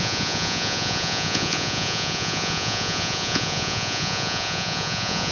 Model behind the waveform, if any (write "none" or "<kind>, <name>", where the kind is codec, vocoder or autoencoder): vocoder, Vocos